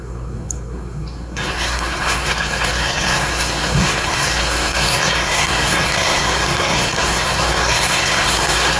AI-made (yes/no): yes